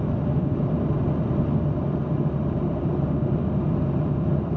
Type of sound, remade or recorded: recorded